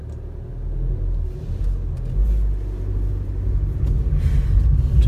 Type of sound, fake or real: real